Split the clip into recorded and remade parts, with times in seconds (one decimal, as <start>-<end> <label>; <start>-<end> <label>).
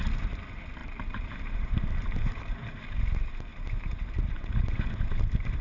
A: 0.0-0.8 recorded; 0.8-2.8 remade; 2.8-3.5 recorded; 3.5-4.5 remade; 4.5-5.6 recorded